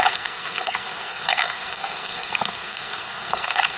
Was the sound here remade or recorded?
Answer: remade